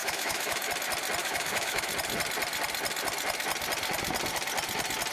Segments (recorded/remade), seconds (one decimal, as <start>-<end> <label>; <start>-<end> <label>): 0.0-0.7 remade; 0.7-1.2 recorded; 1.2-1.9 remade; 1.9-5.1 recorded